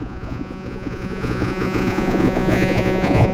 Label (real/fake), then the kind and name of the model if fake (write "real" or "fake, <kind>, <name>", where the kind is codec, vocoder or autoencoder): fake, vocoder, Vocos